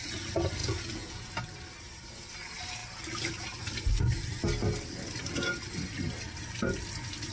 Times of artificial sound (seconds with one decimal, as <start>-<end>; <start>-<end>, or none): 0.6-1.3